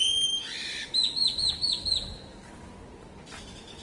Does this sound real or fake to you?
real